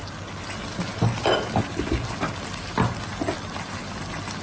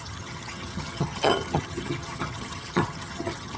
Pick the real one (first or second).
first